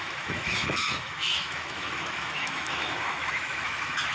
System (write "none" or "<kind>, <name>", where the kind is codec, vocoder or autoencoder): autoencoder, DAC-VAE